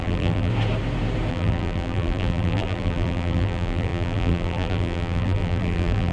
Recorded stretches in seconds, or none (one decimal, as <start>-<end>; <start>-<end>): 0.5-1.3